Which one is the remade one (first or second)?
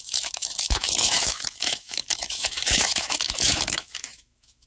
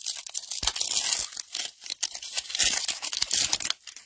first